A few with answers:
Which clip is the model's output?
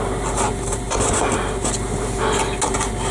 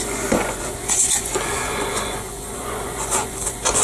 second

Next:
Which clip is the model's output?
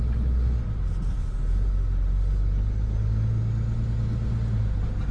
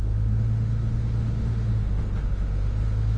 second